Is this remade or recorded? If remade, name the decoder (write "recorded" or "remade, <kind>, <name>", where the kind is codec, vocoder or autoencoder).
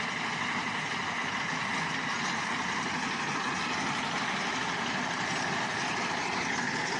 recorded